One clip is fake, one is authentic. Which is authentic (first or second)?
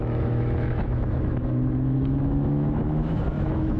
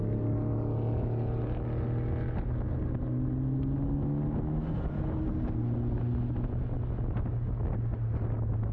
second